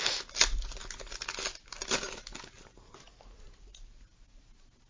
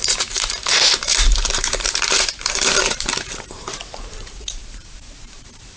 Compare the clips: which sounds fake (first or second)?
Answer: second